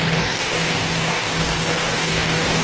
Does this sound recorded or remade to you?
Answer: remade